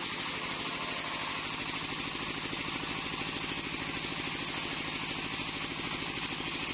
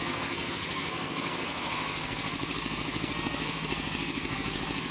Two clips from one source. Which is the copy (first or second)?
second